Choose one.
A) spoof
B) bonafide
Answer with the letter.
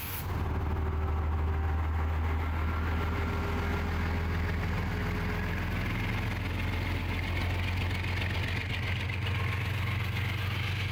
B